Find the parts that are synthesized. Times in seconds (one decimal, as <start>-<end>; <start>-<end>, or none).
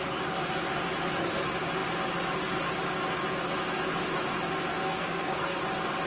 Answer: 4.9-5.6